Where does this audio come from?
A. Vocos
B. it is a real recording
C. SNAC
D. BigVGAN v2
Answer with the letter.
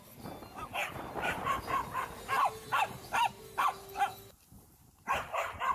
B